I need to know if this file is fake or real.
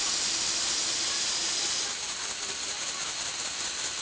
real